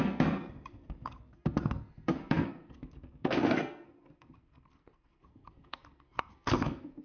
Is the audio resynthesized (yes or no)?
yes